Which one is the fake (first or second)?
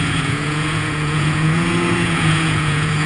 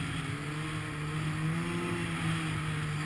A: first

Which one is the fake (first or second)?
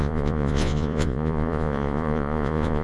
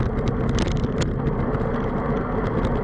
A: first